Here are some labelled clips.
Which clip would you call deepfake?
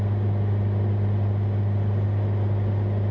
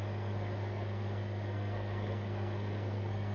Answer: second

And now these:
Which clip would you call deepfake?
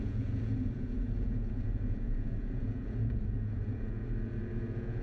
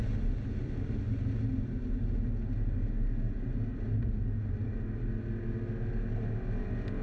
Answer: first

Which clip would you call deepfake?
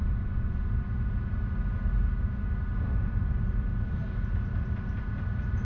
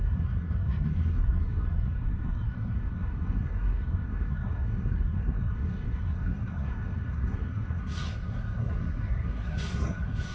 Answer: second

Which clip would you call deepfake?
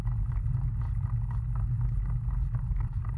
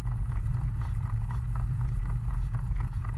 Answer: second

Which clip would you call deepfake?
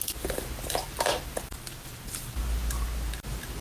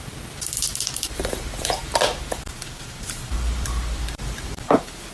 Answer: second